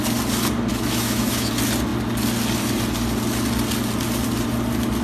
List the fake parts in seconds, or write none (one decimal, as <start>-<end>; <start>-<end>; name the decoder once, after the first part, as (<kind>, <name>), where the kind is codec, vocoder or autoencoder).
0.7-1.5 (autoencoder, DAC-VAE)